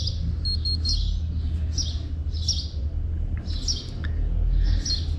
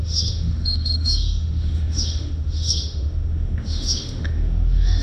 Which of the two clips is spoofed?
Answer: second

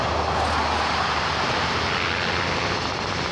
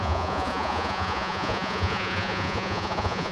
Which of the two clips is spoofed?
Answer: second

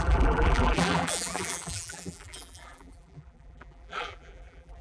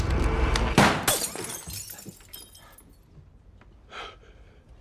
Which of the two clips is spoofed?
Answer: first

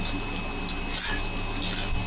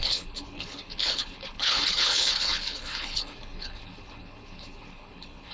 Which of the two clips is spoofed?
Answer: second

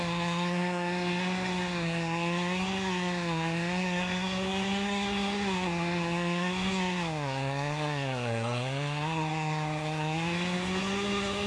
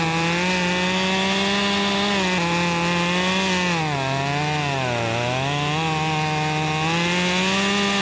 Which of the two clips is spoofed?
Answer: first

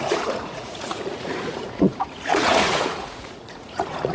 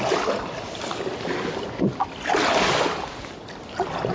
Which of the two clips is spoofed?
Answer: first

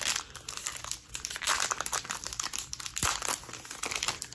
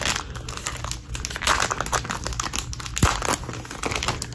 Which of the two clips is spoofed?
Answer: first